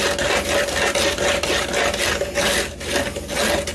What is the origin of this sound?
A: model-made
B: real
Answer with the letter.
B